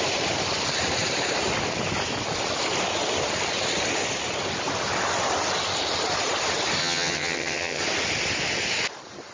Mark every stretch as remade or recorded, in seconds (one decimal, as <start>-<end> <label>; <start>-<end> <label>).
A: 0.0-6.8 recorded; 6.8-7.8 remade; 7.8-9.3 recorded